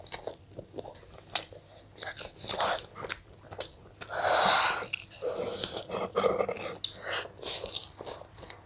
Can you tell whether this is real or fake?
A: real